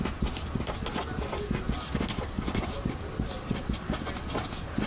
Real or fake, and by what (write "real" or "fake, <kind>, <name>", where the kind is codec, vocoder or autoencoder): real